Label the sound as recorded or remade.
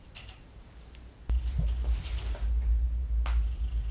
recorded